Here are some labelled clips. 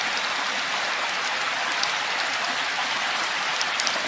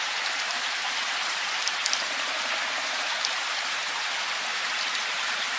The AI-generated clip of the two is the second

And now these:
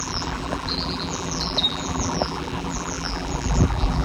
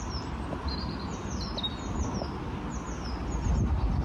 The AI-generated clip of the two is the first